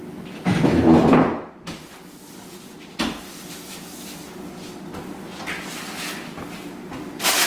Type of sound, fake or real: real